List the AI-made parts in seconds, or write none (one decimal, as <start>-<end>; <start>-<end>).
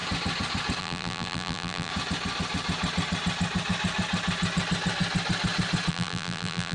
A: 0.8-1.9; 5.9-6.7